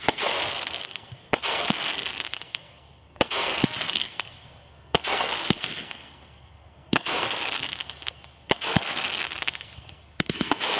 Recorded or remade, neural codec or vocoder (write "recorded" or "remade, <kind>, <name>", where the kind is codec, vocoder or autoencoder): remade, codec, SNAC